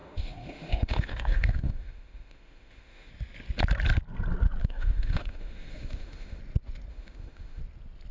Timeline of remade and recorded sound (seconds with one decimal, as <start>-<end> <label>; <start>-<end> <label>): 0.0-3.1 remade; 3.1-4.6 recorded; 4.6-6.4 remade; 6.4-6.9 recorded; 6.9-7.6 remade; 7.6-8.1 recorded